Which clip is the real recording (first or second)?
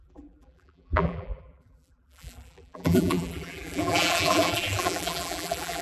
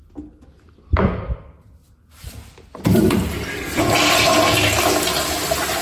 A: second